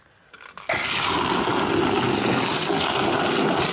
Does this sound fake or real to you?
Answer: real